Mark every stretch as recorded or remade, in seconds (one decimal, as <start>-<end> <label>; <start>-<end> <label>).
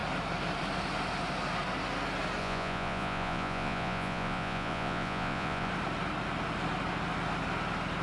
0.0-2.4 recorded; 2.4-5.7 remade; 5.7-8.0 recorded